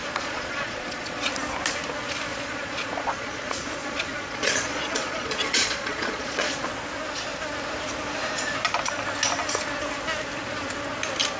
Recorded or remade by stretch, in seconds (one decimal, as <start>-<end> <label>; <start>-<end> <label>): 0.0-1.3 remade; 1.3-2.3 recorded; 2.3-6.7 remade; 6.7-11.4 recorded